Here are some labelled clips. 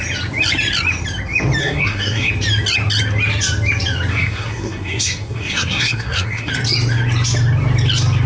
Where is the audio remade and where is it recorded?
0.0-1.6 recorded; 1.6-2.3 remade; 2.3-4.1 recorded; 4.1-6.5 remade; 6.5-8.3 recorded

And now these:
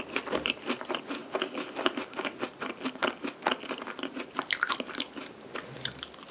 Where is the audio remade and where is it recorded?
0.0-1.2 remade; 1.2-2.6 recorded; 2.6-3.0 remade; 3.0-4.7 recorded; 4.7-6.3 remade

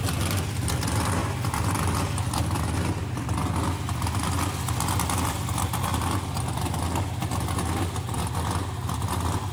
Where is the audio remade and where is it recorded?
0.0-9.5 recorded

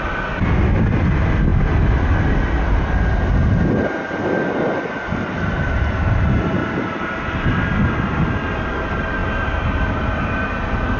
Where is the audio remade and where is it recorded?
0.0-11.0 recorded